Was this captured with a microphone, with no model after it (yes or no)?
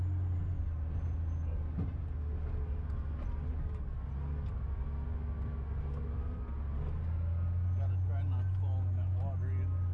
yes